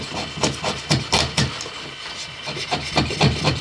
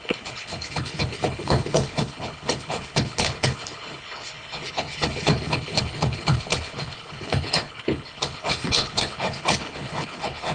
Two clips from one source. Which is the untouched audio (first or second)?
first